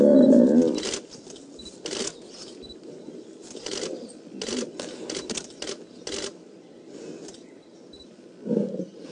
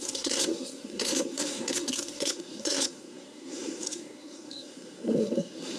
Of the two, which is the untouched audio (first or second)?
first